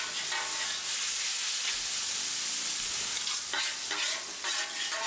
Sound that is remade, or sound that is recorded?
recorded